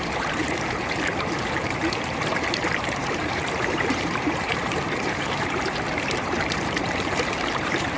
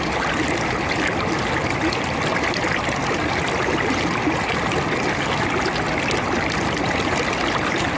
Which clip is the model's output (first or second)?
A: first